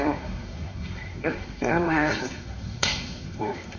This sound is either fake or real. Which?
fake